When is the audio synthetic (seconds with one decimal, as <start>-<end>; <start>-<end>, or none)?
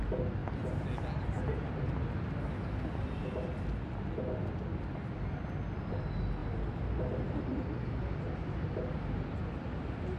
none